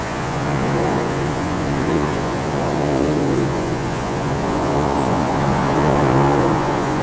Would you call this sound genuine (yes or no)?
no